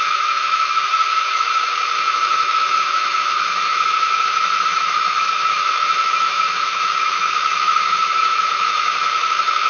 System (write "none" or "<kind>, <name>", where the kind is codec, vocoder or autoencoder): autoencoder, DAC-VAE